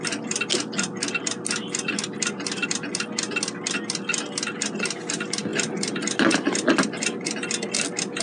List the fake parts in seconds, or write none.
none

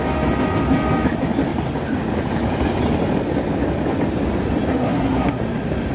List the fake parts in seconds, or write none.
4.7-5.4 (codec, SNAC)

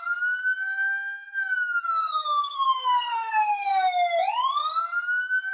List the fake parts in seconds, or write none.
2.0-3.7 (codec, SNAC)

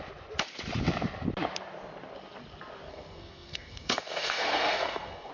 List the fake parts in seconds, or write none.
2.9-5.3 (codec, SNAC)